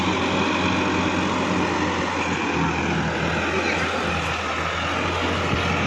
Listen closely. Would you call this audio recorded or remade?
recorded